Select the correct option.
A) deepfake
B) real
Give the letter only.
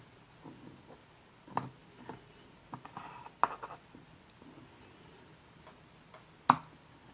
B